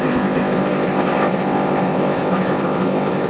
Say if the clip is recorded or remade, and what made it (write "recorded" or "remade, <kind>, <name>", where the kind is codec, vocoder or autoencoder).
remade, codec, ZipCodec